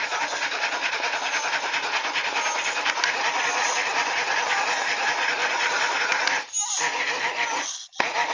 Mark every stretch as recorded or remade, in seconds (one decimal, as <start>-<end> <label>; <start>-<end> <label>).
0.0-5.4 recorded; 5.4-6.0 remade; 6.0-8.3 recorded